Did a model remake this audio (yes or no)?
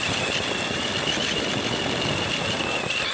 no